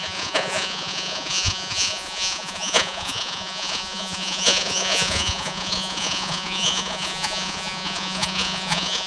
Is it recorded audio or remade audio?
remade